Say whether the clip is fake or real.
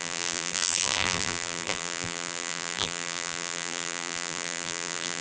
fake